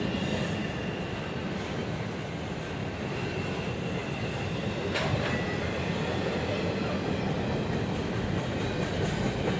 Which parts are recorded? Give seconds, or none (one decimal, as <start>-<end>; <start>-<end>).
0.0-9.6